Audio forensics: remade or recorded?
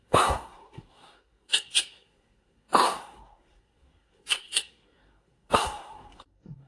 remade